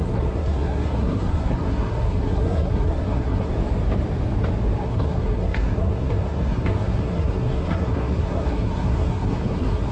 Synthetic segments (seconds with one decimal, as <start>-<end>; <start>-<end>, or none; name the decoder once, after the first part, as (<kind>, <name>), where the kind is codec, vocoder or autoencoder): 0.0-3.5 (codec, SNAC); 4.8-9.9